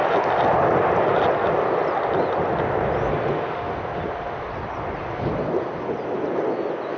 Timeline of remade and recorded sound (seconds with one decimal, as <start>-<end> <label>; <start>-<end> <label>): 0.0-7.0 recorded